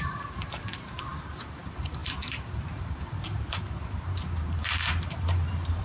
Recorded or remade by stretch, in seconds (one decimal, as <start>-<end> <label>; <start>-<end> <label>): 0.0-5.8 remade